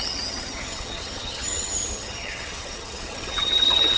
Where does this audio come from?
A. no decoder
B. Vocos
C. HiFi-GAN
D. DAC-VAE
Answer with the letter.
C